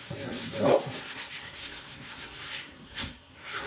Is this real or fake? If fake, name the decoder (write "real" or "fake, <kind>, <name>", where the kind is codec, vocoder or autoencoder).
fake, codec, SNAC